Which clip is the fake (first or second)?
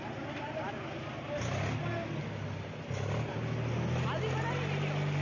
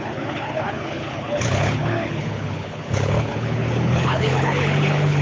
second